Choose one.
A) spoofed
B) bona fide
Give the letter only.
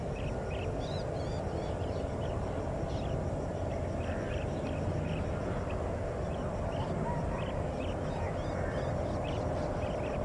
B